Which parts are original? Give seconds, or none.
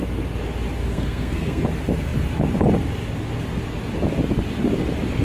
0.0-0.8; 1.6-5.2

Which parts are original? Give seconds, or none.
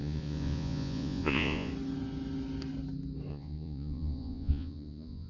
1.7-3.3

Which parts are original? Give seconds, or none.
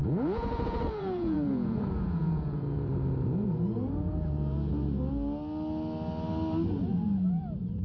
4.7-6.9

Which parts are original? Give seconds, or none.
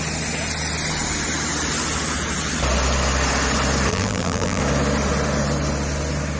0.0-3.9; 4.6-6.4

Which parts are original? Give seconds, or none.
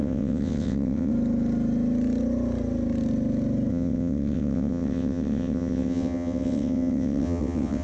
1.1-3.7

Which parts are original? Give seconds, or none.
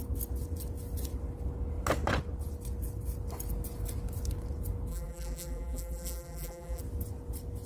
0.0-4.9; 6.8-7.7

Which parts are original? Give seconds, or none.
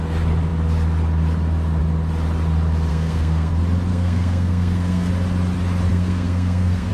0.0-2.9; 3.5-3.9; 5.1-5.9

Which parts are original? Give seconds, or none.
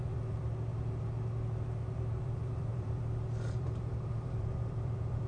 0.7-2.2